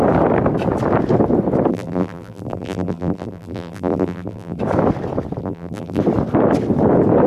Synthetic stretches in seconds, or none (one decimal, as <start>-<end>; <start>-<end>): 1.7-4.6; 5.4-6.0